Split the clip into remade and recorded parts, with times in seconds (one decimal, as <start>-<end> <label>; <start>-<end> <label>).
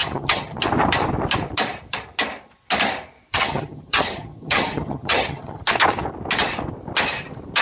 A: 0.0-0.6 remade; 0.6-3.3 recorded; 3.3-5.6 remade; 5.6-7.6 recorded